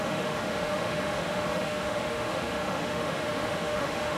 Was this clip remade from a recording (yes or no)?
yes